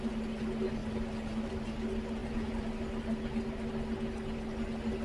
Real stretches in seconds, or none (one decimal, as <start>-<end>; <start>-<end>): 0.0-5.0